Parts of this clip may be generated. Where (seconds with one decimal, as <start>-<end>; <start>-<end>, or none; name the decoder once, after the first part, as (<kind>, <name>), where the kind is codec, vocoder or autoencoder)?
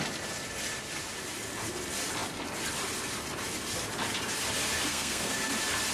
4.9-5.5 (codec, SNAC)